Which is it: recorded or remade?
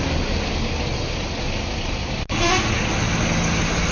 recorded